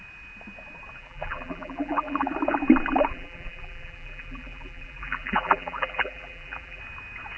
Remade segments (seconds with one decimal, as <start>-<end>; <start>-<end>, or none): 1.0-2.3; 3.1-6.8